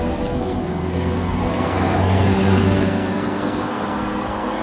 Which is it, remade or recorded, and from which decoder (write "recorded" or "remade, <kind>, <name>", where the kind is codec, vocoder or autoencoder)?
remade, codec, SNAC